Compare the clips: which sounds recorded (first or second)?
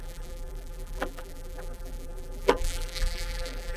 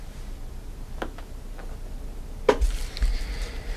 second